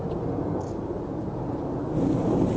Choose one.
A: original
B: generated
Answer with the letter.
A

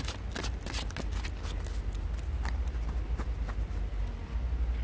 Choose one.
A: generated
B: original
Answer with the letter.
B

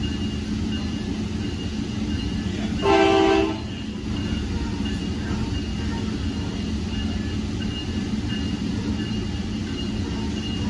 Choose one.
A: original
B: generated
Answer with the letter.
A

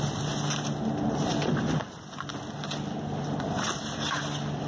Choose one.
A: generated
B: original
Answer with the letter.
B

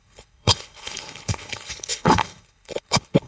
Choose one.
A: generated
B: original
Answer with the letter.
A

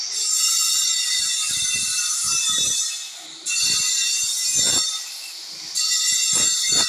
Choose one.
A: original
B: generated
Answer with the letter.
A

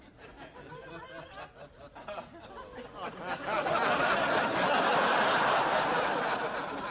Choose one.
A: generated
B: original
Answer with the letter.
B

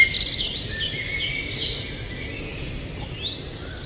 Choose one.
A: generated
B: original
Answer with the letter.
B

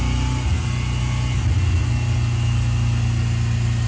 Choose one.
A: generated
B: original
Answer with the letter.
B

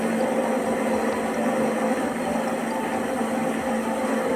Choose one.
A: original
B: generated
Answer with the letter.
A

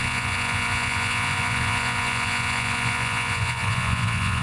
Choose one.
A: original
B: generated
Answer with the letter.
B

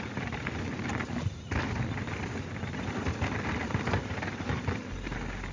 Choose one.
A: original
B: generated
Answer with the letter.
A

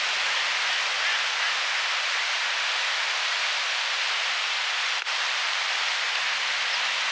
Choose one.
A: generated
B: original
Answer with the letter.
B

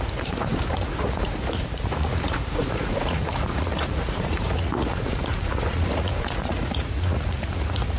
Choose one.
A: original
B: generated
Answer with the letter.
B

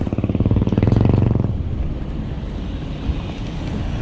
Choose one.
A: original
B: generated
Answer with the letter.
A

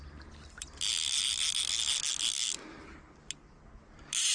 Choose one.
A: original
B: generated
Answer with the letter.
A